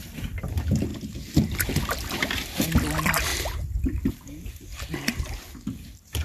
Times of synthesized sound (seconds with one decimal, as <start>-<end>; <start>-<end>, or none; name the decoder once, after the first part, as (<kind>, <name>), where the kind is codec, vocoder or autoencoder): none

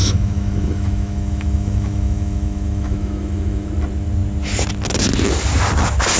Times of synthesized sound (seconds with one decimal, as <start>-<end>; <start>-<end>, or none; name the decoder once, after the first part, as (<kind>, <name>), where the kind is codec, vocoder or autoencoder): 0.0-3.7 (autoencoder, DAC-VAE)